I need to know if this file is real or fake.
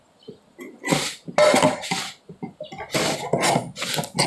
real